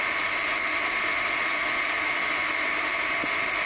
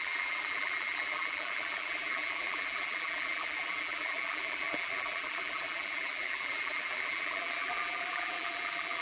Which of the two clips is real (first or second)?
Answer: first